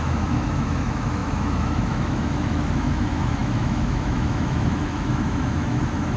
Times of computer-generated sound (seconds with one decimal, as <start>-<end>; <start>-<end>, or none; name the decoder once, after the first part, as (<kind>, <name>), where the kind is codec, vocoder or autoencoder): 0.0-6.2 (autoencoder, DAC-VAE)